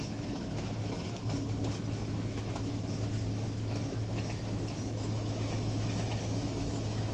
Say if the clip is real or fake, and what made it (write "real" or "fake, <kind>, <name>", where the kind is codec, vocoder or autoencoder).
fake, autoencoder, DAC-VAE